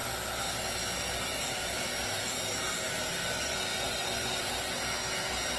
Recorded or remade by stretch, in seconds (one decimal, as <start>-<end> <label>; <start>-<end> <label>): 0.0-3.3 recorded; 3.3-4.5 remade; 4.5-5.6 recorded